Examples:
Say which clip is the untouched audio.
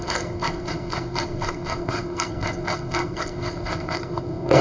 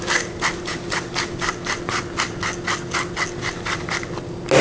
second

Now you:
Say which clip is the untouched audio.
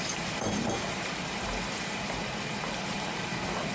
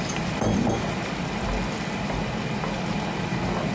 second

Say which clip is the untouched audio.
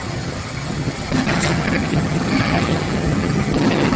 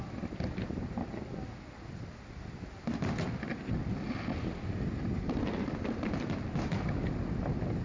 second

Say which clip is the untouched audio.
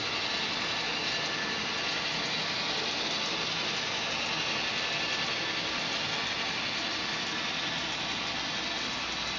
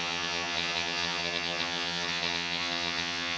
first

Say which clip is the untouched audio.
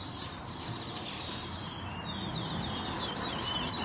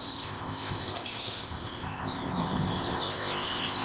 first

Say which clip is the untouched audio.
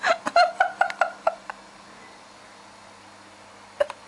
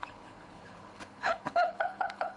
first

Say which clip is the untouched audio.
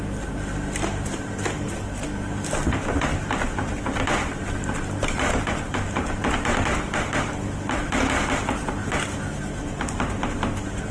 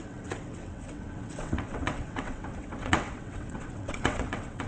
first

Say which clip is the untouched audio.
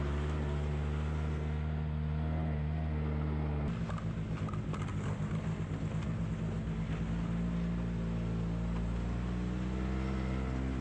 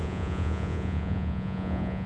first